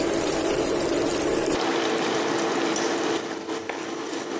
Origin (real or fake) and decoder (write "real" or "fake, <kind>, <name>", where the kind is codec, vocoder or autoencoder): fake, vocoder, BigVGAN v2